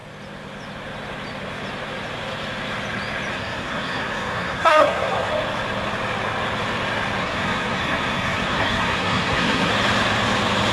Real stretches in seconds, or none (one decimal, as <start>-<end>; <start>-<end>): 0.0-3.3; 5.3-7.2; 9.7-10.7